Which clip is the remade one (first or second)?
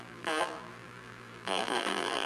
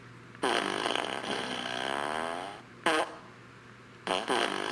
first